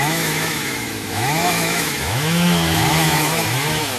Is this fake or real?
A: fake